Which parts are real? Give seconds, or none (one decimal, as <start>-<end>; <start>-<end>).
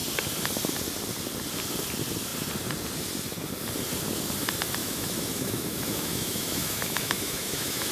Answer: 0.0-4.8